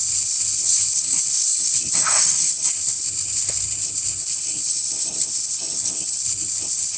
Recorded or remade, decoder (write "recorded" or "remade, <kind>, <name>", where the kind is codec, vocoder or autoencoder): remade, codec, SNAC